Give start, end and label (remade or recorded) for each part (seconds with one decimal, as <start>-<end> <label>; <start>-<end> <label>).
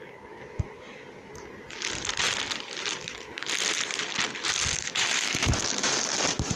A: 0.0-3.0 recorded; 3.0-3.5 remade; 3.5-4.7 recorded; 4.7-5.9 remade; 5.9-6.6 recorded